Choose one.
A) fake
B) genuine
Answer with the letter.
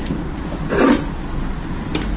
B